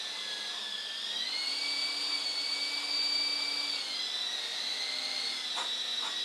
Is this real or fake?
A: real